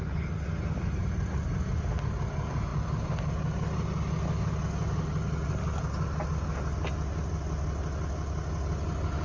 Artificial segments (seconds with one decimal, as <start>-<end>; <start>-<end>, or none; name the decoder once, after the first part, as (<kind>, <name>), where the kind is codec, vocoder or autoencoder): none